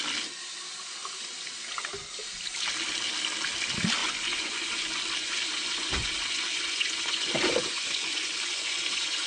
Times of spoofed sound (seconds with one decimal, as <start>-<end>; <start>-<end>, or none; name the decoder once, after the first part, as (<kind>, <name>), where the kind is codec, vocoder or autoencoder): 4.0-9.3 (vocoder, Vocos)

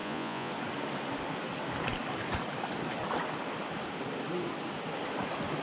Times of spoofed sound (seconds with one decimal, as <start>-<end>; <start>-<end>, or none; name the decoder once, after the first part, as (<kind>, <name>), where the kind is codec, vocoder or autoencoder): 0.0-0.5 (vocoder, Vocos)

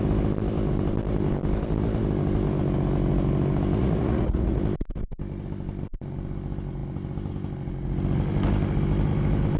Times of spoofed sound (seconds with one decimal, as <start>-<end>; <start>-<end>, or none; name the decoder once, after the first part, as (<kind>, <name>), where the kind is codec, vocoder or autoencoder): 3.8-4.6 (vocoder, Vocos)

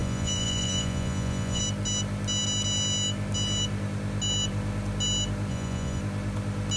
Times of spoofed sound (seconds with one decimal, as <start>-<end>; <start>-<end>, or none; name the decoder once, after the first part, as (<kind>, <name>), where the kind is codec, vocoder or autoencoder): 0.0-1.6 (vocoder, Vocos); 5.5-6.0

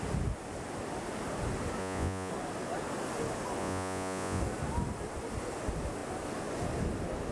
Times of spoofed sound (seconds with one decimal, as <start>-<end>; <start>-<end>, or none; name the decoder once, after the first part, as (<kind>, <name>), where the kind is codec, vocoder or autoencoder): 1.8-2.3 (vocoder, Vocos); 3.6-4.4

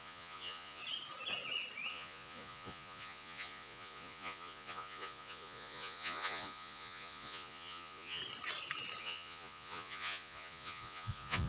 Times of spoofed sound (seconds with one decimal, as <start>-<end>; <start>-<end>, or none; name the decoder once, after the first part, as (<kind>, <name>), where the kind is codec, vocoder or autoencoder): 0.0-0.8 (vocoder, Vocos); 1.9-8.2; 9.0-11.5